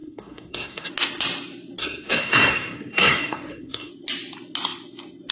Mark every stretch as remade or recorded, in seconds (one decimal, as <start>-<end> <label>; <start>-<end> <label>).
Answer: 0.0-0.9 remade; 0.9-1.8 recorded; 1.8-3.9 remade; 3.9-5.3 recorded